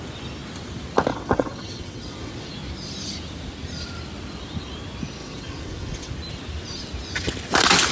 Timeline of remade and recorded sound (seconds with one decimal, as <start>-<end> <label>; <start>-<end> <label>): 0.0-1.1 recorded; 1.1-2.5 remade; 2.5-5.2 recorded; 5.2-6.1 remade; 6.1-7.9 recorded

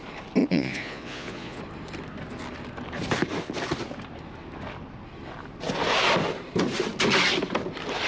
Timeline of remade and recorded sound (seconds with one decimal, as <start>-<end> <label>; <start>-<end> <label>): 0.0-0.4 recorded; 0.4-1.6 remade; 1.6-8.1 recorded